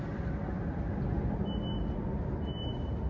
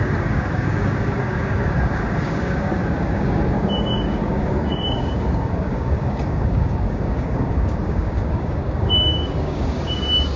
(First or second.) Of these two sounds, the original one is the first